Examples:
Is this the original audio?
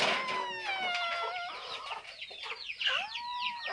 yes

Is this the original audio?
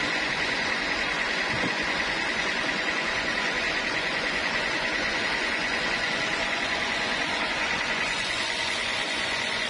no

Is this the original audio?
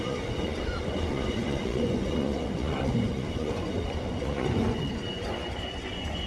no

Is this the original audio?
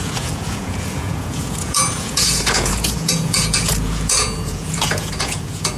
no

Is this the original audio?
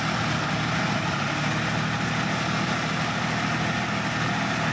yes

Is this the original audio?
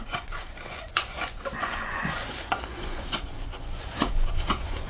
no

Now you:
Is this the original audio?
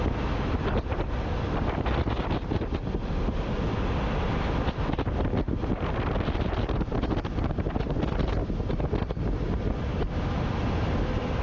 yes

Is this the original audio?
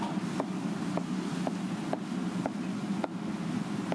yes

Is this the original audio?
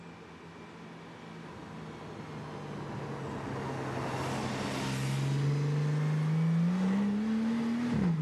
yes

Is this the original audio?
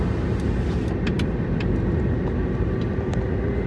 yes